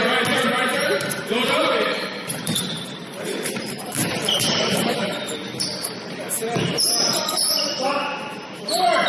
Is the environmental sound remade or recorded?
remade